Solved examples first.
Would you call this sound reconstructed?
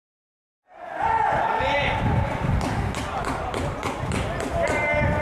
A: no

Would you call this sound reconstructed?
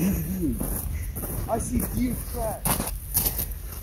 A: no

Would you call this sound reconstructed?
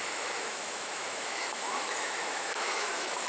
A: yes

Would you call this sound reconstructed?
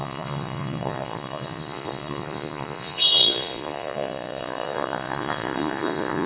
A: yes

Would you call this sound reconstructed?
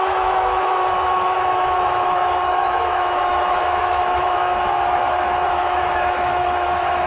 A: yes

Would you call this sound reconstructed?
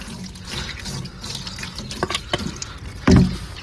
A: no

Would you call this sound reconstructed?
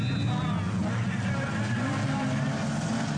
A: no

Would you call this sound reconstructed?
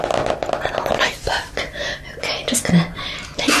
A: no